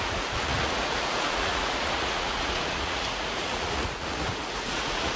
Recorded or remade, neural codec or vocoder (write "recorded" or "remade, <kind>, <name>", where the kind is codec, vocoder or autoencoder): remade, vocoder, Vocos